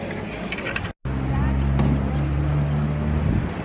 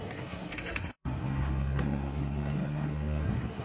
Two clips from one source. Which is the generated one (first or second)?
second